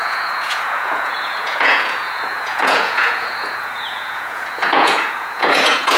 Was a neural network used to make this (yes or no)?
yes